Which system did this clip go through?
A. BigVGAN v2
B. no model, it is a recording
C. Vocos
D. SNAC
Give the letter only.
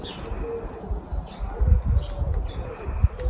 B